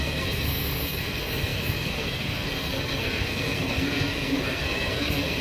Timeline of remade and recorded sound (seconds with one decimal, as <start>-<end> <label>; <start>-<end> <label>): 0.0-5.4 remade

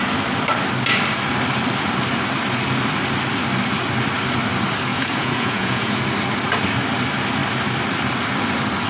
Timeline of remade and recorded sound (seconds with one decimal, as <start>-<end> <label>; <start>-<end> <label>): 0.0-4.9 recorded; 4.9-6.0 remade; 6.0-8.9 recorded

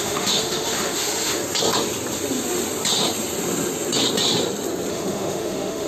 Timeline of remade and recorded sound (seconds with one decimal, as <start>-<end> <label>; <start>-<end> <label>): 0.0-1.4 remade; 1.4-4.9 recorded; 4.9-5.9 remade

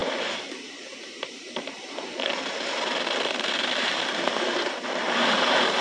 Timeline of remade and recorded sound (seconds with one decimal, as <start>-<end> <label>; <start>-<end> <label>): 0.0-5.8 remade

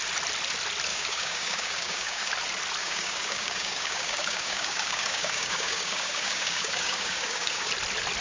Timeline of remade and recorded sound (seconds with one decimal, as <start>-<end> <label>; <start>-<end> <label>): 0.0-0.9 recorded; 0.9-2.3 remade; 2.3-2.8 recorded; 2.8-7.7 remade; 7.7-8.2 recorded

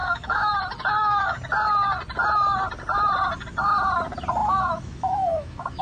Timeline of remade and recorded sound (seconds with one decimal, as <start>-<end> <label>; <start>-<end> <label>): 0.0-0.5 remade; 0.5-0.9 recorded; 0.9-1.4 remade; 1.4-4.4 recorded; 4.4-5.8 remade

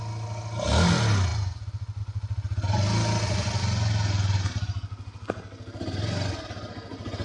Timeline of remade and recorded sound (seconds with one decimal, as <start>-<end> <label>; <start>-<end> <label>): 0.0-7.2 recorded